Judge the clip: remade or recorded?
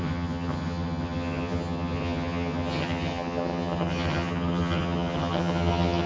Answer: remade